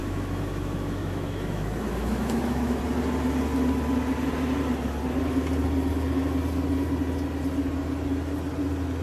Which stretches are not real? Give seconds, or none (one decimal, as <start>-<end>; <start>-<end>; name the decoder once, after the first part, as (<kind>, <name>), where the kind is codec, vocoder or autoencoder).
0.0-2.8 (autoencoder, DAC-VAE)